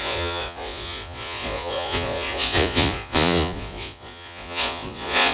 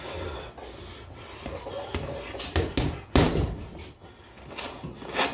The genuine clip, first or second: second